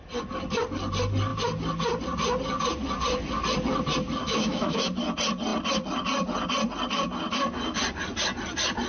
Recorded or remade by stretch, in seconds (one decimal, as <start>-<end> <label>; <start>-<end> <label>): 0.0-4.2 recorded; 4.2-4.8 remade; 4.8-8.9 recorded